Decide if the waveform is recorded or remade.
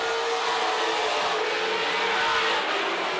recorded